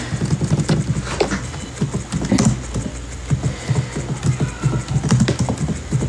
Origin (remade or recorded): recorded